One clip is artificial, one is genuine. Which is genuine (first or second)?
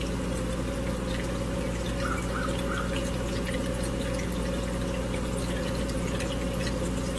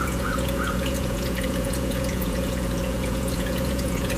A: first